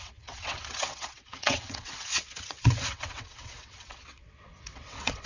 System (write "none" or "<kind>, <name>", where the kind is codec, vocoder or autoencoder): vocoder, WaveNeXt